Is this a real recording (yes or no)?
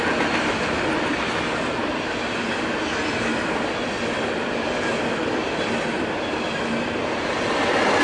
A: yes